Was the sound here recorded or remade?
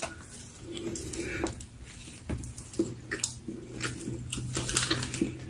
recorded